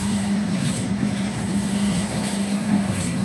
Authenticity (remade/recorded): remade